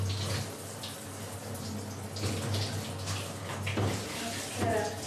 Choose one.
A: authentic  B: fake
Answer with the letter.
A